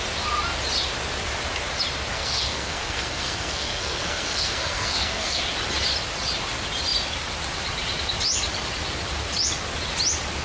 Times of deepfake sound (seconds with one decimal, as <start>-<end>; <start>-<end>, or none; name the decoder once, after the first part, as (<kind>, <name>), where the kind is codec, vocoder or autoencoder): 2.1-5.4 (codec, SNAC)

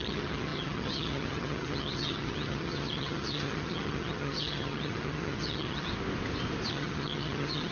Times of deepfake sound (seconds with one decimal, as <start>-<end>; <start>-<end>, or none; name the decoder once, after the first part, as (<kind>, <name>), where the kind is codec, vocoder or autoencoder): 0.0-5.9 (vocoder, HiFi-GAN); 6.7-7.7

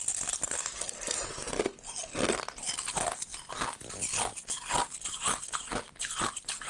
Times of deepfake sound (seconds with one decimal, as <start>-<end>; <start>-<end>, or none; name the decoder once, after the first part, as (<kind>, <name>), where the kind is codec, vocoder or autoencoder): none